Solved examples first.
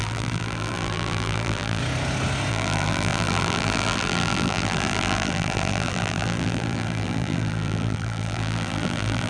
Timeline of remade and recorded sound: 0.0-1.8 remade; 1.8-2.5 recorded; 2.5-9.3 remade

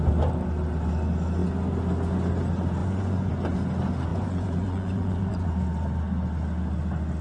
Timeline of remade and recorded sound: 0.0-2.8 recorded; 2.8-3.3 remade; 3.3-4.1 recorded; 4.1-5.5 remade; 5.5-7.2 recorded

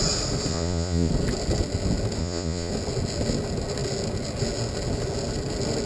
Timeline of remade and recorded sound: 0.0-0.5 recorded; 0.5-1.1 remade; 1.1-2.2 recorded; 2.2-2.7 remade; 2.7-5.9 recorded